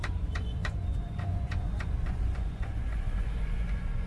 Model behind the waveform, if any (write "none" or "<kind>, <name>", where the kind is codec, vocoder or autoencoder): vocoder, Vocos